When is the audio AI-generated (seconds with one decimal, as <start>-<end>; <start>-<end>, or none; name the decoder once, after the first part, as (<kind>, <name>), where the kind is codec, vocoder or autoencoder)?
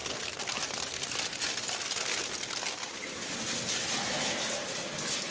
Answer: none